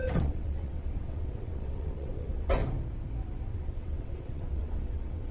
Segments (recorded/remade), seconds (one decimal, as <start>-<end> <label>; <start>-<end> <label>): 0.0-2.6 remade; 2.6-3.5 recorded; 3.5-5.3 remade

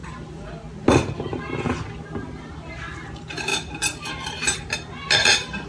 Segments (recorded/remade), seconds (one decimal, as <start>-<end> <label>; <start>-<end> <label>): 0.0-5.7 recorded

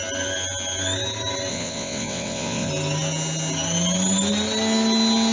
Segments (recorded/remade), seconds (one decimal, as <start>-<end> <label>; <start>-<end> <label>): 0.0-1.5 recorded; 1.5-2.7 remade; 2.7-5.3 recorded

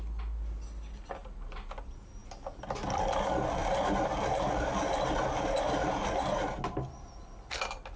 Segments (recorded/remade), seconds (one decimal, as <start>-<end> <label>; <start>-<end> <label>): 0.0-8.0 recorded